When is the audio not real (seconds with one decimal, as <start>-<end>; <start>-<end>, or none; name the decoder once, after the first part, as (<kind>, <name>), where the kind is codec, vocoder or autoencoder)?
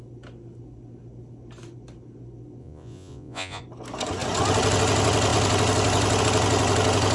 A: 2.6-3.6 (vocoder, Vocos)